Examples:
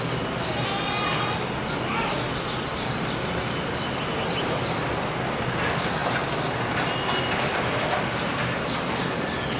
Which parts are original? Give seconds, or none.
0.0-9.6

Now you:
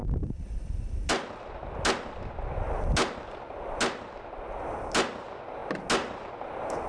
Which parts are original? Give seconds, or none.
0.0-6.9

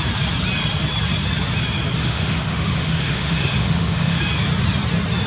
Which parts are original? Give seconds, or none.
0.0-2.0; 4.2-5.3

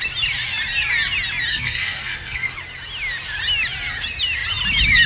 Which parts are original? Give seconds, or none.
0.0-1.5; 2.5-5.1

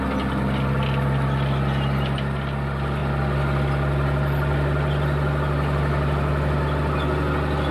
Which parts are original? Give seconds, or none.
0.0-7.7

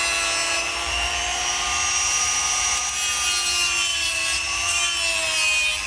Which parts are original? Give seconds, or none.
0.0-0.4; 2.8-3.9; 4.9-5.9